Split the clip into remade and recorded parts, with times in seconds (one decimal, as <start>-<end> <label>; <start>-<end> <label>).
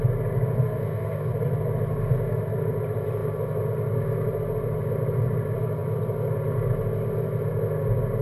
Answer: 0.0-0.6 recorded; 0.6-1.3 remade; 1.3-8.2 recorded